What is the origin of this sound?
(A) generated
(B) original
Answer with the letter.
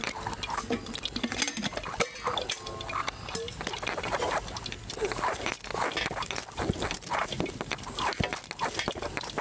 B